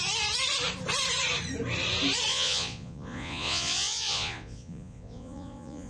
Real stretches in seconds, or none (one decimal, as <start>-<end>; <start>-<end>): 0.0-2.3